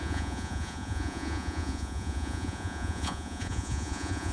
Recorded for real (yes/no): no